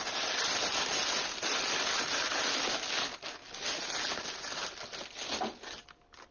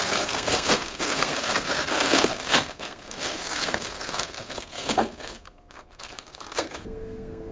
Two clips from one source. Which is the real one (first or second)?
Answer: first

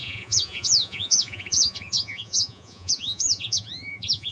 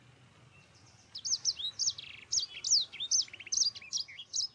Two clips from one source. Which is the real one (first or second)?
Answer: second